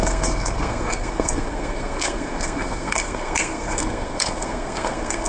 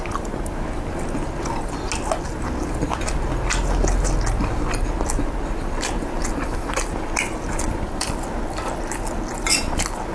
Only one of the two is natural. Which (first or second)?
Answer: second